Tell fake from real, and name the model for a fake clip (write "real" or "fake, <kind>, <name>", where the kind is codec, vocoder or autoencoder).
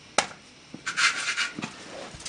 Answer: real